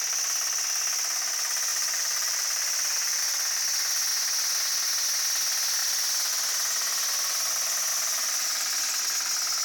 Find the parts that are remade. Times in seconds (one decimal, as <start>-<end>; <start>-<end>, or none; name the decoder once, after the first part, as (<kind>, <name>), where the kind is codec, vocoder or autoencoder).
1.7-3.2 (vocoder, BigVGAN v2); 5.8-6.3; 7.9-8.7